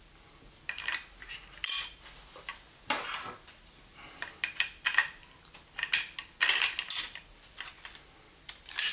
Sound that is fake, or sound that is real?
real